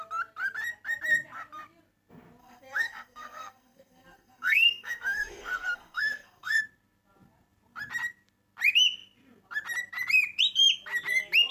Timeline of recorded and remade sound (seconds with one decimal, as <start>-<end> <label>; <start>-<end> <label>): 0.0-2.4 recorded; 2.4-6.6 remade; 6.6-11.5 recorded